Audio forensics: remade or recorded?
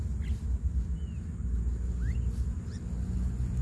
recorded